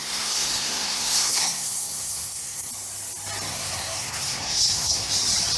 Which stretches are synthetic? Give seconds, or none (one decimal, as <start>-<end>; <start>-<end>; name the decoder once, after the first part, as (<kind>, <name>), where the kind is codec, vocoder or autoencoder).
0.0-2.7 (codec, SNAC); 3.5-5.1